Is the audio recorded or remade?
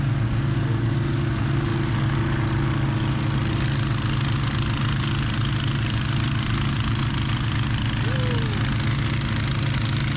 recorded